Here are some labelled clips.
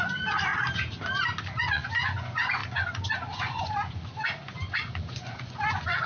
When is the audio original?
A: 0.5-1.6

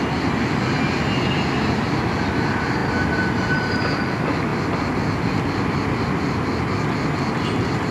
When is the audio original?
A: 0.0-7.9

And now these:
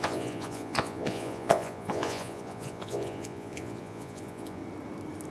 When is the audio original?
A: 4.6-5.3

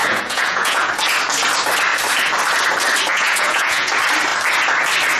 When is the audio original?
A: 0.9-3.1; 3.9-5.2